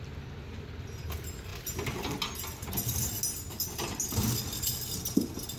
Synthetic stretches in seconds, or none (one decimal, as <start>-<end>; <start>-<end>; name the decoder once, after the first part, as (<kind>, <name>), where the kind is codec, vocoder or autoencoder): none